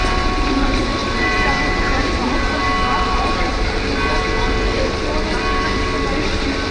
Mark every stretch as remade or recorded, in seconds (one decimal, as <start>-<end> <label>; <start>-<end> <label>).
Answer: 0.0-1.0 recorded; 1.0-4.2 remade; 4.2-6.7 recorded